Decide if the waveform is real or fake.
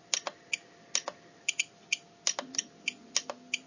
real